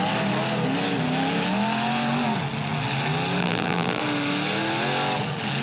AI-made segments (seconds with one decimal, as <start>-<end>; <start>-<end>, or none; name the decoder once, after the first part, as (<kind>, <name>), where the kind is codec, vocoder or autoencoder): 3.4-4.0 (vocoder, BigVGAN v2)